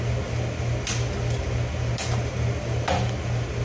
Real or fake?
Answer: real